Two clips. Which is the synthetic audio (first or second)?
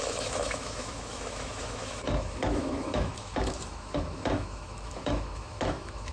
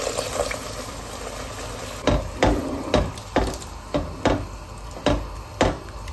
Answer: first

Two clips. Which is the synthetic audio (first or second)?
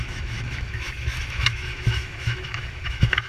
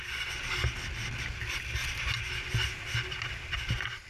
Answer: first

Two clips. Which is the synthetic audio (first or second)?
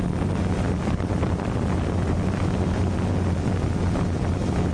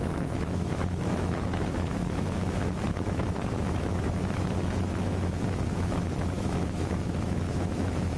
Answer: second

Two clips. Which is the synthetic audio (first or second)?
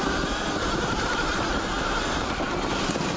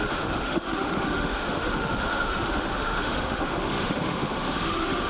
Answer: second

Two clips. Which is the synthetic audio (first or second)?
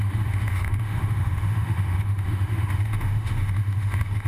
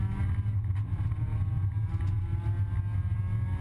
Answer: first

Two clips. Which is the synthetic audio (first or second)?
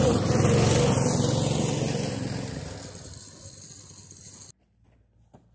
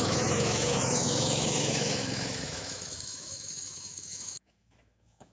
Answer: second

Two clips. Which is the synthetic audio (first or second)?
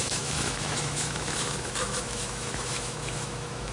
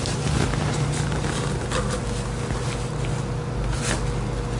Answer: first